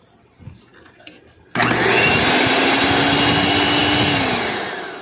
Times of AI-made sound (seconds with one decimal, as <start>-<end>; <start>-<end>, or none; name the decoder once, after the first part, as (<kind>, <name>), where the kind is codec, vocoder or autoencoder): none